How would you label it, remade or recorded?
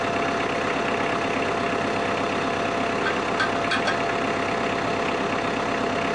recorded